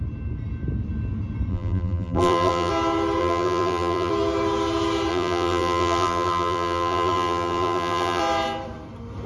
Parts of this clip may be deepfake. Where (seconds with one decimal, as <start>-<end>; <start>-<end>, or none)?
1.5-2.7; 3.2-4.1; 5.1-8.2